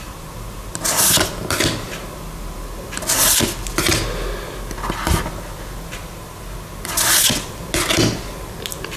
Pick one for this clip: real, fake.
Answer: real